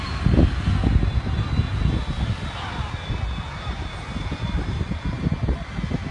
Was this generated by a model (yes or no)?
no